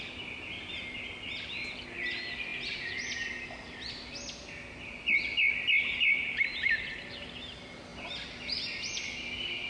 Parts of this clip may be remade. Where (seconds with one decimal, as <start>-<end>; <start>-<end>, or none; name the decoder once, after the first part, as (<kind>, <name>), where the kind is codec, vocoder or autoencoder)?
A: none